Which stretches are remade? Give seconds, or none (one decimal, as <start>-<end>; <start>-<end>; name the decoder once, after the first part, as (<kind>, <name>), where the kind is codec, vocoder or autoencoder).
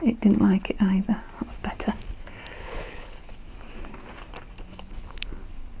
2.6-3.3 (codec, HILCodec); 4.7-5.3